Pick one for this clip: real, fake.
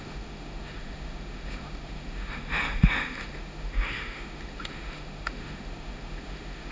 fake